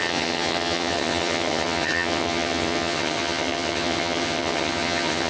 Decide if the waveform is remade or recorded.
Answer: remade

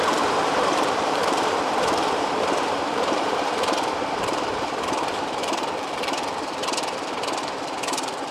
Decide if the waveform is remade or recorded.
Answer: remade